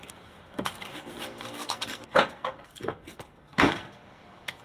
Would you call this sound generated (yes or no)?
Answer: yes